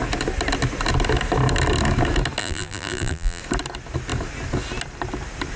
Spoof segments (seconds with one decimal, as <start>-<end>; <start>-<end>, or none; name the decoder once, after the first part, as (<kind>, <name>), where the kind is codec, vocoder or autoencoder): 2.4-3.4 (vocoder, BigVGAN v2)